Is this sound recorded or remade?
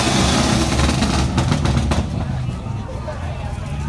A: recorded